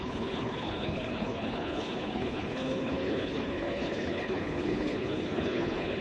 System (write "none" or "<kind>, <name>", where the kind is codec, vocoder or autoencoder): codec, HILCodec